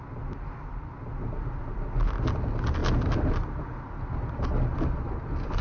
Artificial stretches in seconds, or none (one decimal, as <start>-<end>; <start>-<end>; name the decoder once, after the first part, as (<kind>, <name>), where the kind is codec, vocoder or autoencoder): none